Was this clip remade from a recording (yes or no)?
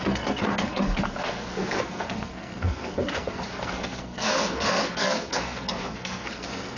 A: yes